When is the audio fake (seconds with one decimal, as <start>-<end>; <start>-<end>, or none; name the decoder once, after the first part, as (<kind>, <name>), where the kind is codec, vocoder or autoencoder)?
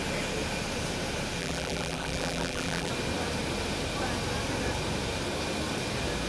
1.4-2.9 (vocoder, BigVGAN v2)